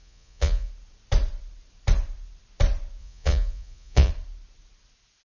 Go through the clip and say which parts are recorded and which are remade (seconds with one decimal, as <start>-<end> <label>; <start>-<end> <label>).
0.0-0.7 remade; 0.7-3.0 recorded; 3.0-4.1 remade; 4.1-5.4 recorded